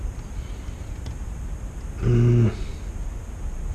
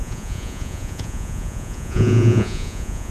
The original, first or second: first